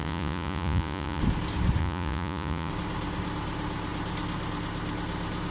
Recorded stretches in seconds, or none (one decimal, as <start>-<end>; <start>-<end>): 1.2-1.8; 2.7-5.5